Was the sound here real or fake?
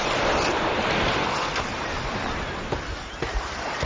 real